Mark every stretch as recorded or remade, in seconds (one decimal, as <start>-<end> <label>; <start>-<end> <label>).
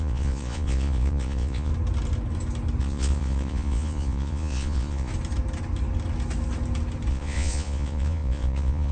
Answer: 0.0-1.7 remade; 1.7-2.8 recorded; 2.8-5.1 remade; 5.1-7.1 recorded; 7.1-8.9 remade